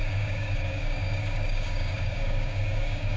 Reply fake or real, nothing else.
fake